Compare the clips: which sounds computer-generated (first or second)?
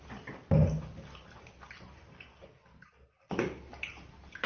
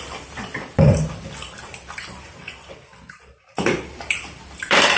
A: second